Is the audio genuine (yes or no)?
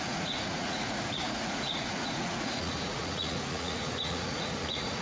no